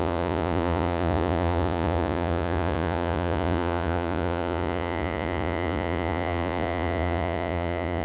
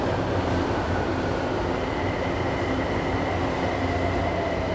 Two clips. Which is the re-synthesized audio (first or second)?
first